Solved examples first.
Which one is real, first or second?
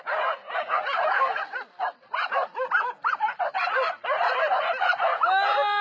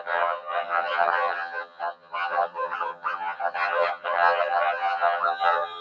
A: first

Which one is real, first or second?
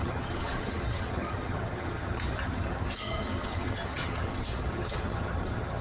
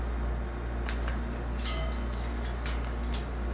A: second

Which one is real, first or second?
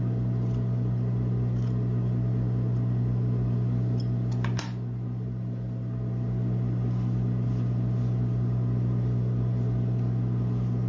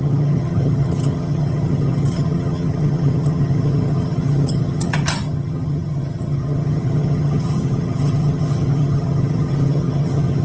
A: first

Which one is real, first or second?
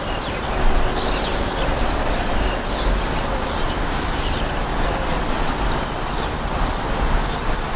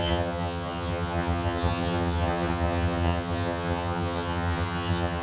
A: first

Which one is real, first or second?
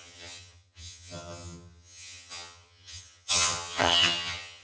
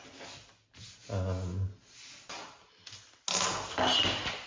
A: second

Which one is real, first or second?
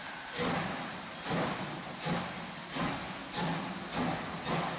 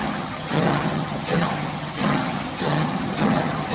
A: first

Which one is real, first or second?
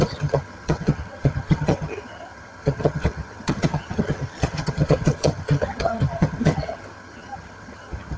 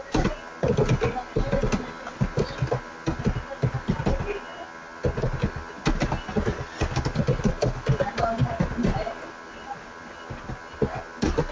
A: second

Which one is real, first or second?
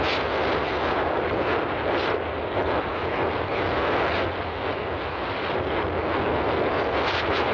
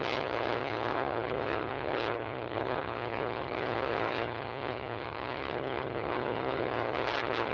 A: first